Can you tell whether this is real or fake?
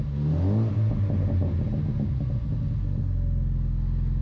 real